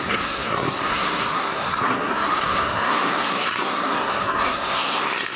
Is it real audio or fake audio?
fake